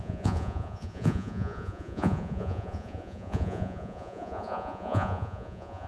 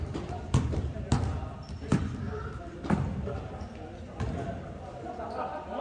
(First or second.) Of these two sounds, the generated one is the first